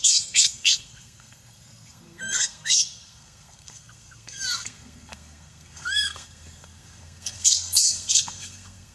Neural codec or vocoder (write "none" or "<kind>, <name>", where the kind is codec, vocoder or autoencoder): codec, SNAC